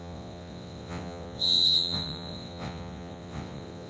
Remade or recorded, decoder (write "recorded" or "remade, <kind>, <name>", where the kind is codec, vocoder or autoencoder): remade, vocoder, WaveNeXt